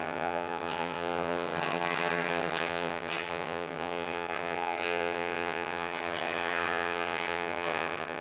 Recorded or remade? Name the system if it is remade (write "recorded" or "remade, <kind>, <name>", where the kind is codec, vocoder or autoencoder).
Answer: remade, vocoder, HiFi-GAN